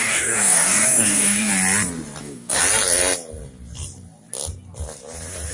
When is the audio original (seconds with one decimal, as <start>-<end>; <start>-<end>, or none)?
1.5-2.2; 2.6-5.5